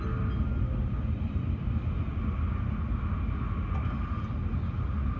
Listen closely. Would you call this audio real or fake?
real